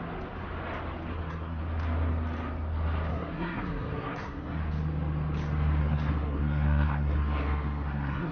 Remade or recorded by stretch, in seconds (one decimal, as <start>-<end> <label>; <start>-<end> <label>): 0.0-1.1 recorded; 1.1-1.6 remade; 1.6-3.1 recorded; 3.1-4.6 remade; 4.6-5.8 recorded; 5.8-8.3 remade